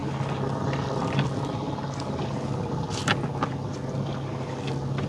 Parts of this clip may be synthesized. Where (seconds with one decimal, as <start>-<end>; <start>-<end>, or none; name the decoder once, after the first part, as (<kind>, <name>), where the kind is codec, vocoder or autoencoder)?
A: none